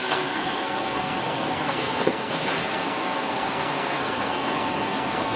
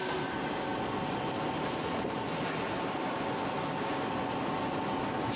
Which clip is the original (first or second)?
second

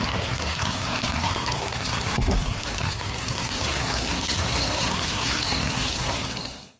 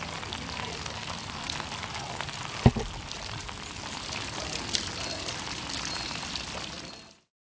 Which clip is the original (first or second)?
second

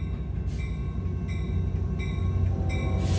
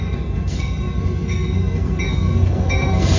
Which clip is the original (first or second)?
first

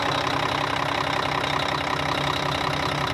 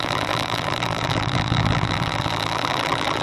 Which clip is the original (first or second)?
first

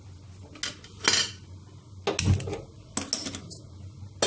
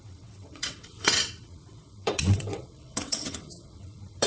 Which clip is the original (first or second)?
first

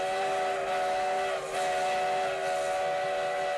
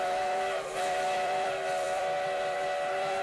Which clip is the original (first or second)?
first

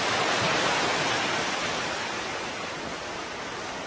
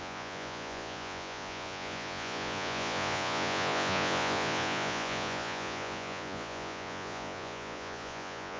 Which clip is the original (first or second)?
first